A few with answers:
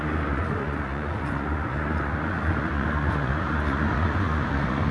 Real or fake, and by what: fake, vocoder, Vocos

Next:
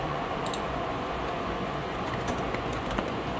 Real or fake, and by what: fake, vocoder, Vocos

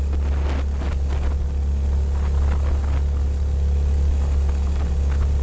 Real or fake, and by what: real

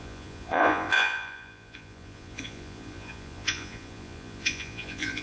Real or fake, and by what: fake, vocoder, Vocos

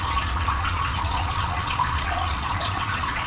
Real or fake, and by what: fake, vocoder, Vocos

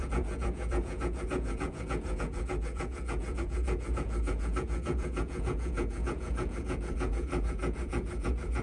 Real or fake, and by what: fake, vocoder, Vocos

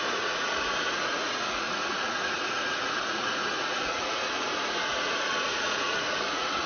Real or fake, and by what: fake, vocoder, Vocos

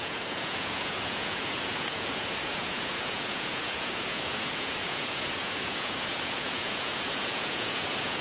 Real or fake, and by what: fake, vocoder, Vocos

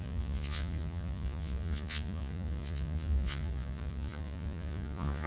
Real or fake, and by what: fake, vocoder, Vocos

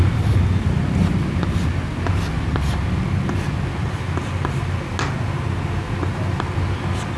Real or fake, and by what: real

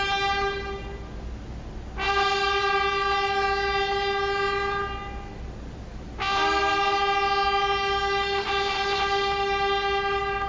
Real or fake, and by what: real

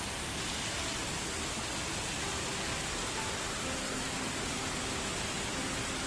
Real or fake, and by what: real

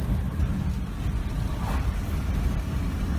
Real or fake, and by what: real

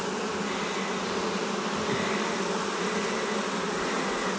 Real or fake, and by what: real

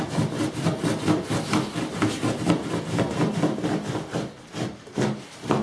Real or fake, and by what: real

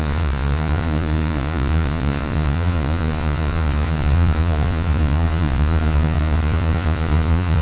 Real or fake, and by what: fake, vocoder, Vocos